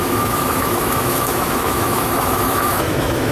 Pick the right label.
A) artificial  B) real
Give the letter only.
A